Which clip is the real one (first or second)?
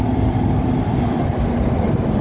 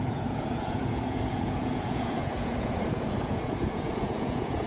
first